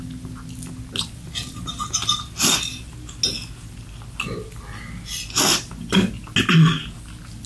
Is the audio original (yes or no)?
yes